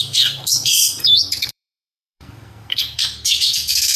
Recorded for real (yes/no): no